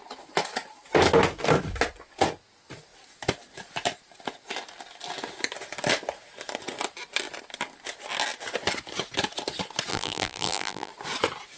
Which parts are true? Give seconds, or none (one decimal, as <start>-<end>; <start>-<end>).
0.0-9.9; 10.9-11.6